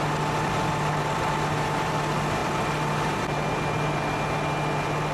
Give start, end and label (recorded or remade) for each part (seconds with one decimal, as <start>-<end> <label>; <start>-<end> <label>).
0.0-5.1 recorded